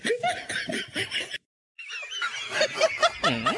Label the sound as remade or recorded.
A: recorded